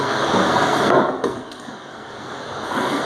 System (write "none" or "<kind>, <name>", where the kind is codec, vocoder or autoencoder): codec, SNAC